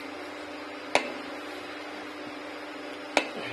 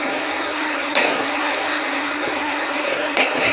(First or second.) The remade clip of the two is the second